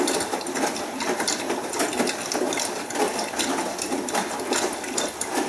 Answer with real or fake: real